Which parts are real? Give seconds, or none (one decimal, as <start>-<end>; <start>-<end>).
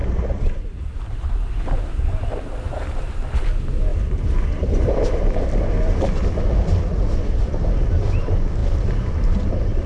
none